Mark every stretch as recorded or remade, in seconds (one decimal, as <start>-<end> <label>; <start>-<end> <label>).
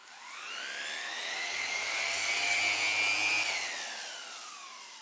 0.0-0.5 remade; 0.5-1.0 recorded; 1.0-2.6 remade; 2.6-5.0 recorded